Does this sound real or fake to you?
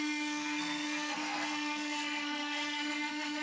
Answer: fake